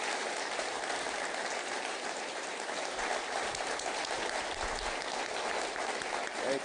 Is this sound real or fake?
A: fake